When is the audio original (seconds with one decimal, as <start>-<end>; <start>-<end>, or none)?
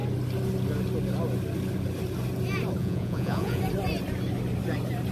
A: 0.0-2.8; 3.6-5.1